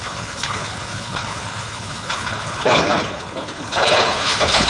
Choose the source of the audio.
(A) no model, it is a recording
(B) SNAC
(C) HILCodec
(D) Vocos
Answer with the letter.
C